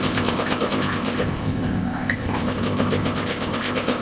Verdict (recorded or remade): remade